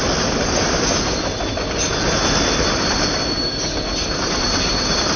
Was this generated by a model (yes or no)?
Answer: no